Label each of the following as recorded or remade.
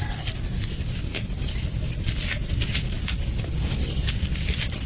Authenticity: recorded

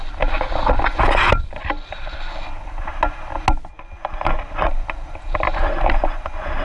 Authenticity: recorded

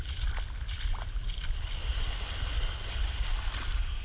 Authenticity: recorded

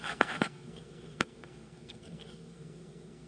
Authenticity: remade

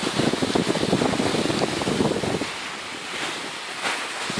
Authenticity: recorded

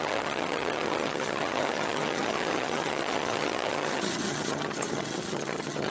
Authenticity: remade